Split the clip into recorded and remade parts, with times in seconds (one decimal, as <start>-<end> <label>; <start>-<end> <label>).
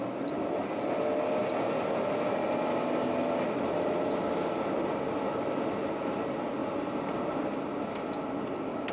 0.0-8.9 recorded